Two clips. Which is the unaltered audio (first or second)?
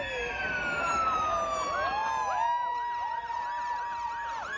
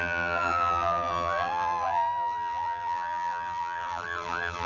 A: first